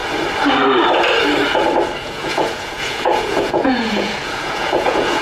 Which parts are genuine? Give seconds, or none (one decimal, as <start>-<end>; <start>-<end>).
0.0-2.0